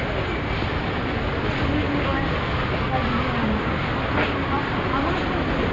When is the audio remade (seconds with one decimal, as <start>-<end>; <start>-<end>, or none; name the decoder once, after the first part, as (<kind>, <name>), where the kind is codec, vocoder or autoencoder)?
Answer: none